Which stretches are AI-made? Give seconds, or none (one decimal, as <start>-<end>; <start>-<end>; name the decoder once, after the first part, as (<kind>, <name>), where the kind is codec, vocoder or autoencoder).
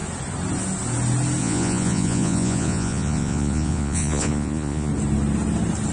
1.4-4.9 (vocoder, Vocos)